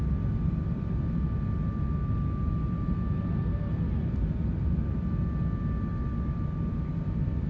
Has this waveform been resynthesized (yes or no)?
no